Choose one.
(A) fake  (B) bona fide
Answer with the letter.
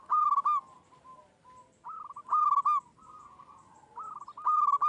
B